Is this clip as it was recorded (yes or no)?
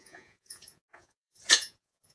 no